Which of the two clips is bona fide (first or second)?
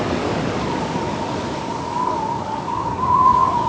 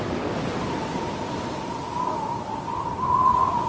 second